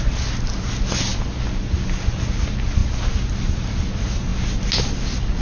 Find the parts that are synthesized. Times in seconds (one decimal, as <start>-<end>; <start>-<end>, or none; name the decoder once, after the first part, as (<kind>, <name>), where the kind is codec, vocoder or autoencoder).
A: none